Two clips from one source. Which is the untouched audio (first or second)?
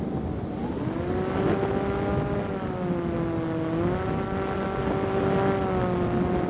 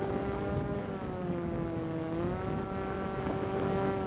first